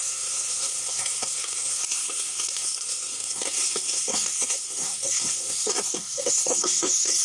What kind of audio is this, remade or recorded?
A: remade